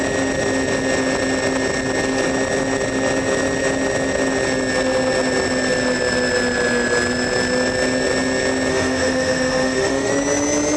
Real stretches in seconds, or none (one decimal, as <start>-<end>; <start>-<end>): 0.0-8.7; 10.1-10.8

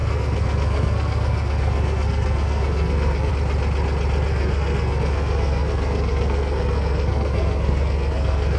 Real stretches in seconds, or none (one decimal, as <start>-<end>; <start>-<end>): 3.3-4.3